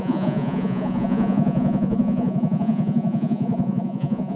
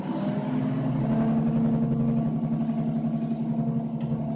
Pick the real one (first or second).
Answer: second